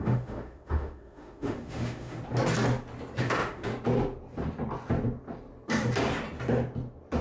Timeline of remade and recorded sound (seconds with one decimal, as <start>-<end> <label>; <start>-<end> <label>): 0.0-2.2 remade; 2.2-3.2 recorded; 3.2-3.7 remade; 3.7-7.2 recorded